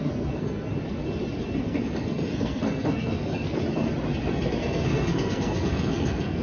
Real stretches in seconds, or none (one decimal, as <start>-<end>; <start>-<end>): 0.7-1.6; 3.6-4.5